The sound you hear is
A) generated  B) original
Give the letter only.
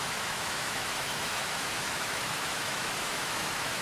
A